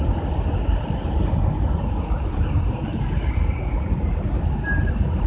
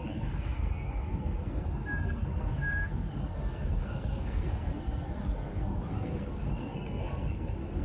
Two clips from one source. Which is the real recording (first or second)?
first